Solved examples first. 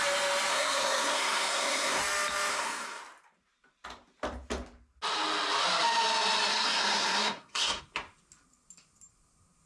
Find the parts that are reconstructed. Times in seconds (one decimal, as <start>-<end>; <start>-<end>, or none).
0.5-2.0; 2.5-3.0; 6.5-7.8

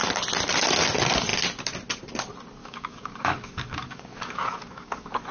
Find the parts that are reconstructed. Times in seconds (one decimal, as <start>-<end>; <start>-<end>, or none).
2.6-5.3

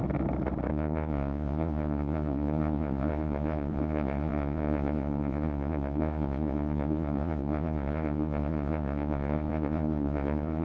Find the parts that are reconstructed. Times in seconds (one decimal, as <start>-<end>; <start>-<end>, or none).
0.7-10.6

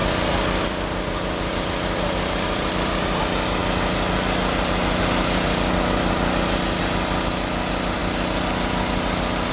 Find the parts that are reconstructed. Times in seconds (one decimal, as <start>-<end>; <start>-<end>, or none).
0.0-3.2